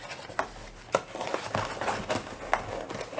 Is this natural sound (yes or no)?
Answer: yes